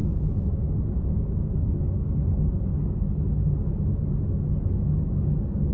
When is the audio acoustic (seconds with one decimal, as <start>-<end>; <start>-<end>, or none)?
0.0-1.0; 3.9-4.7